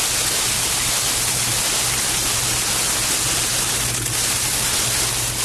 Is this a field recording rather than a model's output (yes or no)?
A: yes